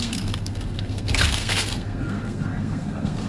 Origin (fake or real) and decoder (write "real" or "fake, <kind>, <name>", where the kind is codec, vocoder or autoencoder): fake, codec, SNAC